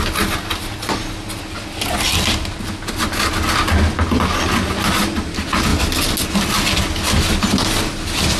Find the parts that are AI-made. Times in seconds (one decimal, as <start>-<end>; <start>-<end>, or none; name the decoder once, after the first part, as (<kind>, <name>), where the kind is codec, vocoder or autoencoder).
none